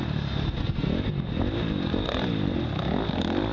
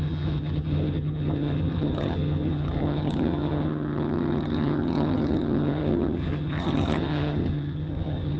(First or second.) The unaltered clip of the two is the first